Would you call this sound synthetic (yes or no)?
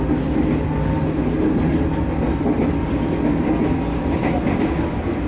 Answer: no